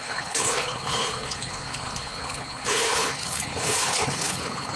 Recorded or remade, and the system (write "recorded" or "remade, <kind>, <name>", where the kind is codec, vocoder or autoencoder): remade, codec, HILCodec